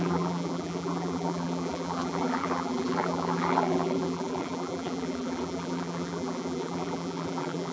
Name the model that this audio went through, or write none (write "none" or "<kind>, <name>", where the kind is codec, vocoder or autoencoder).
vocoder, BigVGAN v2